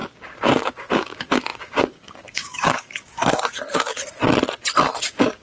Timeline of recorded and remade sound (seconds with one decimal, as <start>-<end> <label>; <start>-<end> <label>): 0.0-4.0 remade; 4.0-5.0 recorded; 5.0-5.4 remade